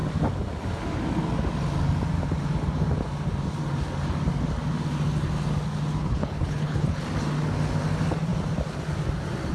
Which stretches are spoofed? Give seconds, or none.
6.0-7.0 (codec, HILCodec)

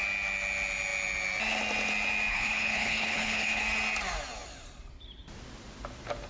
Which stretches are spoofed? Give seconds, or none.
2.3-3.6 (codec, HILCodec)

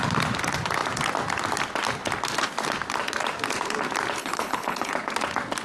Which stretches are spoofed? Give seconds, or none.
4.2-4.9 (codec, HILCodec)